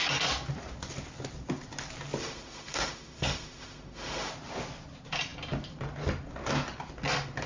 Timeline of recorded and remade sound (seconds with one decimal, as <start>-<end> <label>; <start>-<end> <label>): 0.0-2.2 recorded; 2.2-4.3 remade; 4.3-7.5 recorded

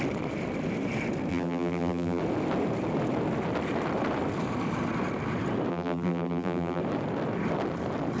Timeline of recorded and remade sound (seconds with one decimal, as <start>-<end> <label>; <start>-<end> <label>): 0.0-1.3 recorded; 1.3-2.2 remade; 2.2-5.7 recorded; 5.7-6.8 remade; 6.8-8.2 recorded

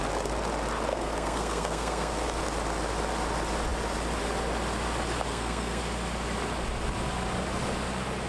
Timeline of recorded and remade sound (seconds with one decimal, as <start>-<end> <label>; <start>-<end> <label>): 0.0-0.9 recorded; 0.9-2.1 remade; 2.1-5.3 recorded; 5.3-5.8 remade; 5.8-8.3 recorded

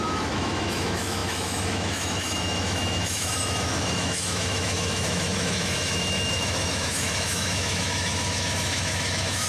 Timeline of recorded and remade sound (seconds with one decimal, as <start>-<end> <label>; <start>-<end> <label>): 0.0-9.5 remade

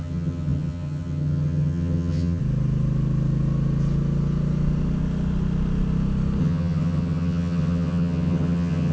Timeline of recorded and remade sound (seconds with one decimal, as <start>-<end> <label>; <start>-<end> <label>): 0.0-2.4 remade; 2.4-6.4 recorded; 6.4-8.9 remade

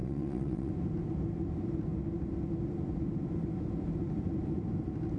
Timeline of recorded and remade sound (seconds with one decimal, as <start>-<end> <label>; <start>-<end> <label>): 0.0-0.7 remade; 0.7-5.2 recorded

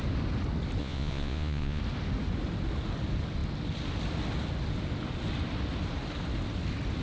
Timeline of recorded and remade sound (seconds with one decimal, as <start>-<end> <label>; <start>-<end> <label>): 0.0-0.8 recorded; 0.8-1.8 remade; 1.8-7.0 recorded

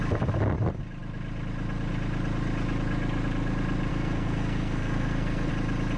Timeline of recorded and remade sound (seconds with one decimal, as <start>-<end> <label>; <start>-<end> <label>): 0.0-3.9 recorded; 3.9-5.5 remade; 5.5-6.0 recorded